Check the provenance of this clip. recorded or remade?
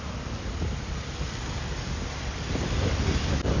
recorded